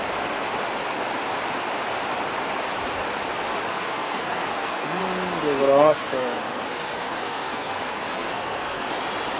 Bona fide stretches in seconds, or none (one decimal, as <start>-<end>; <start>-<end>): 0.0-3.7; 5.0-5.6; 8.9-9.4